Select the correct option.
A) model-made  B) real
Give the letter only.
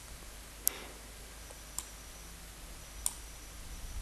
B